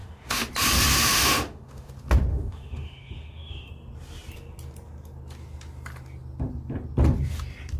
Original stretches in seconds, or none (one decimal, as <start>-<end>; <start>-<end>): 0.5-0.9; 1.9-2.3; 3.7-7.8